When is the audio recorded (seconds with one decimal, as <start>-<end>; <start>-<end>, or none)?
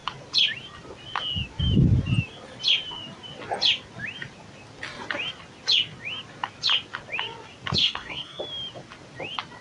0.0-7.8; 8.4-9.6